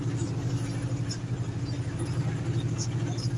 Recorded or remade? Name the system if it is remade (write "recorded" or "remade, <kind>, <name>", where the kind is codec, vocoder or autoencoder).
recorded